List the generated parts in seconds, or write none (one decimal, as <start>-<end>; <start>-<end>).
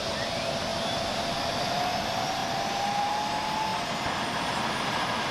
2.4-3.2